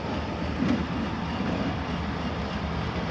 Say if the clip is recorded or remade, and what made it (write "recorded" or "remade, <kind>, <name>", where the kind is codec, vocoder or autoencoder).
recorded